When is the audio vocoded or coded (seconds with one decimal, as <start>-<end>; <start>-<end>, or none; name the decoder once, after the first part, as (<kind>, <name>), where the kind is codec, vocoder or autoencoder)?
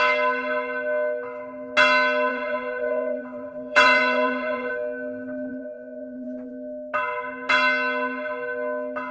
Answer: 2.3-4.7 (vocoder, Vocos); 5.5-6.5